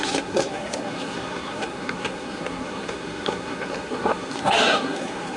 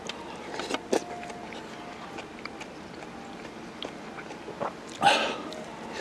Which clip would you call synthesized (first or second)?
first